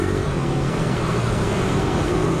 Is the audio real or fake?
fake